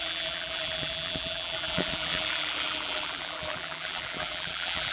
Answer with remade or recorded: remade